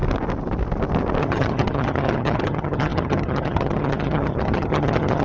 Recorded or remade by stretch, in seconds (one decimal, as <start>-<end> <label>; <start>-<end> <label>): 0.0-1.2 recorded; 1.2-5.2 remade